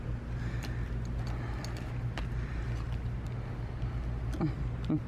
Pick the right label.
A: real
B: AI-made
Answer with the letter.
A